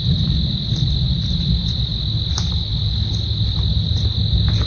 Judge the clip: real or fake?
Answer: real